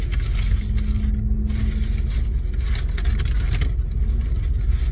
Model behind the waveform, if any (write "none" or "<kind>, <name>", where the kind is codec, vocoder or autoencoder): none